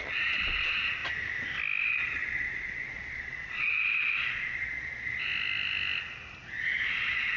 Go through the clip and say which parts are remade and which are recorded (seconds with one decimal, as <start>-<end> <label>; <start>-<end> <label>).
0.0-1.0 remade; 1.0-1.8 recorded; 1.8-5.3 remade; 5.3-6.7 recorded; 6.7-7.4 remade